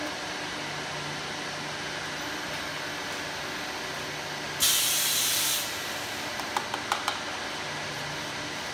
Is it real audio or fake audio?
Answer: real